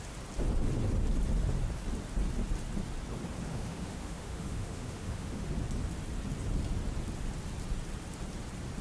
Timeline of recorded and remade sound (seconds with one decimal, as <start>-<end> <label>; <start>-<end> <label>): 0.0-3.5 recorded; 3.5-5.4 remade; 5.4-8.8 recorded